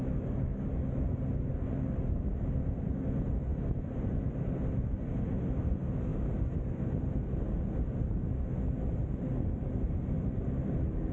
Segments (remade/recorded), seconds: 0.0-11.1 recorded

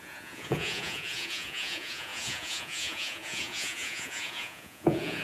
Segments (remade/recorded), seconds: 0.0-5.2 remade

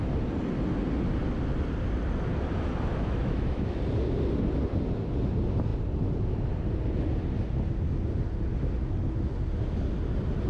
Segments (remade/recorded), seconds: 0.0-2.9 recorded; 2.9-3.8 remade; 3.8-10.5 recorded

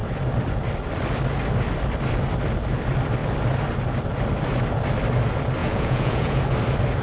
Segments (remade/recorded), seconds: 0.0-5.6 recorded; 5.6-6.4 remade; 6.4-7.0 recorded